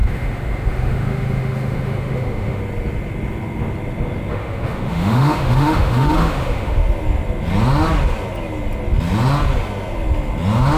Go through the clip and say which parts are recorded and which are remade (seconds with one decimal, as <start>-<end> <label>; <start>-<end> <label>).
0.0-2.6 remade; 2.6-4.3 recorded; 4.3-6.8 remade; 6.8-10.8 recorded